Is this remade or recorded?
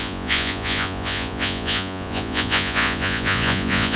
remade